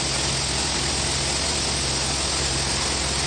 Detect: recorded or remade recorded